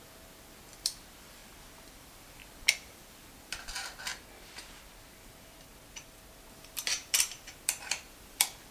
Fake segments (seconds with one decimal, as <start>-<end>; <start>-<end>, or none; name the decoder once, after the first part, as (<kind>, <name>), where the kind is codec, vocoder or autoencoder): 0.0-1.4 (vocoder, BigVGAN v2); 2.0-4.1; 6.5-8.7